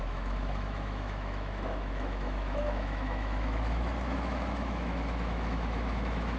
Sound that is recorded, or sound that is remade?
remade